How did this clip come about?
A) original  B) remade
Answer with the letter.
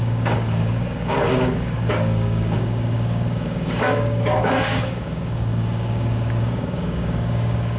B